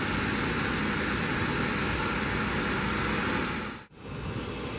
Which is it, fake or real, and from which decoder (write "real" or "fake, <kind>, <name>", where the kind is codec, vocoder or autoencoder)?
real